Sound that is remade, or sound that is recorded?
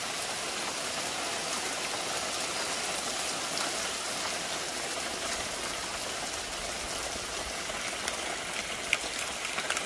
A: recorded